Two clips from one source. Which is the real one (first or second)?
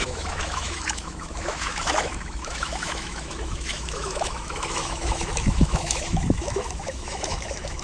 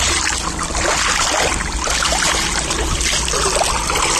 second